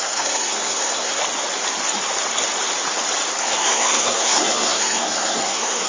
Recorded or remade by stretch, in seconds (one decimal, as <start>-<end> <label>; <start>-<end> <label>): 0.0-1.2 remade; 1.2-3.4 recorded; 3.4-5.9 remade